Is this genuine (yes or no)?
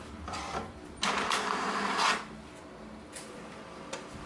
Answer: yes